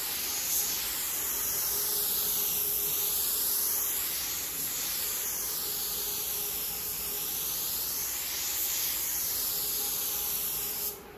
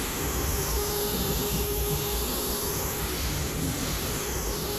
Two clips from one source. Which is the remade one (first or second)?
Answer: second